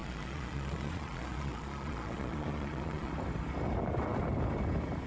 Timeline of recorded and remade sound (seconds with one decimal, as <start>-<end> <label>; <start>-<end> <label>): 0.0-3.1 remade; 3.1-5.1 recorded